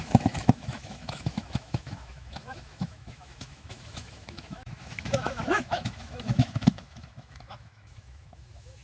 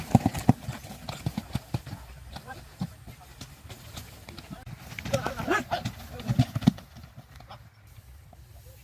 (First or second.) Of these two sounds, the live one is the second